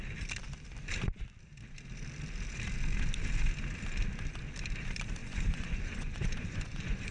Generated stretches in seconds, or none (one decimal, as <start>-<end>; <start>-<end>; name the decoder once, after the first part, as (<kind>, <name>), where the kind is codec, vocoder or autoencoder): 5.2-7.1 (vocoder, Vocos)